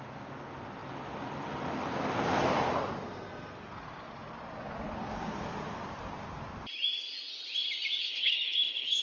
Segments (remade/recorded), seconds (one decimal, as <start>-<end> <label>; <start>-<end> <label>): 0.0-8.0 recorded; 8.0-9.0 remade